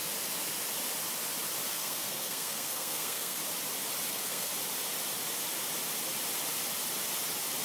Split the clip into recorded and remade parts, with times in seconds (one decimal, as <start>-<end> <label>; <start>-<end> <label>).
0.0-1.7 recorded; 1.7-3.4 remade; 3.4-4.1 recorded; 4.1-4.5 remade; 4.5-7.6 recorded